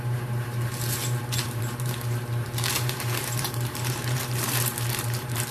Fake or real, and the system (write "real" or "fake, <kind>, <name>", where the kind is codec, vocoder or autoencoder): fake, vocoder, BigVGAN v2